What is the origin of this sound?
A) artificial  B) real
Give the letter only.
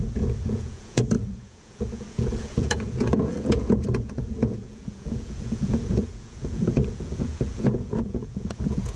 A